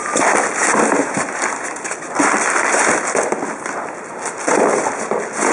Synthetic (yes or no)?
no